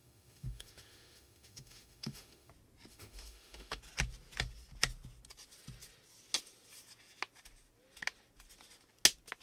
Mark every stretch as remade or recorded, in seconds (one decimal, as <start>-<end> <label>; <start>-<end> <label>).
0.0-2.5 remade; 2.5-2.9 recorded; 2.9-3.8 remade; 3.8-9.4 recorded